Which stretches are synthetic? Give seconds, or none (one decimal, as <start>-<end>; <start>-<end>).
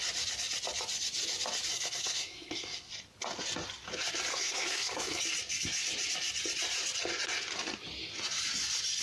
1.7-2.9; 4.3-5.2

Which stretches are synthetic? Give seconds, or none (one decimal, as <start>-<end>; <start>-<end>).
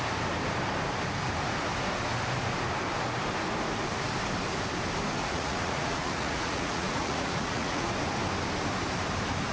5.2-7.9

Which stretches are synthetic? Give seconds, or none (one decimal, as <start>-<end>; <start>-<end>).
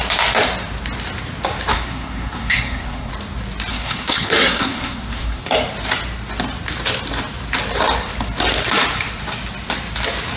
1.7-3.1; 3.7-5.4